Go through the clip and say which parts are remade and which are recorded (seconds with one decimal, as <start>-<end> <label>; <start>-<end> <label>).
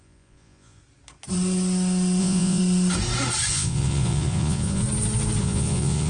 0.0-0.8 remade; 0.8-2.2 recorded; 2.2-2.6 remade; 2.6-3.5 recorded; 3.5-4.8 remade; 4.8-5.4 recorded; 5.4-6.1 remade